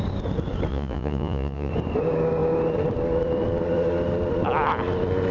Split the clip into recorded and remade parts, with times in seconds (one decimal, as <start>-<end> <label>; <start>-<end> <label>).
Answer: 0.0-0.7 recorded; 0.7-1.7 remade; 1.7-5.3 recorded